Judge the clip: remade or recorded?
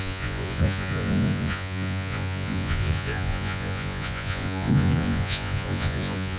remade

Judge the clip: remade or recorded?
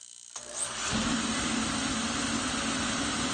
recorded